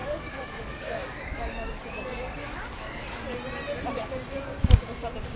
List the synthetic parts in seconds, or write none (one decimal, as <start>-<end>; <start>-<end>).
0.0-3.2